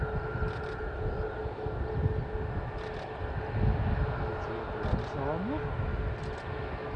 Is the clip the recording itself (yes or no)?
yes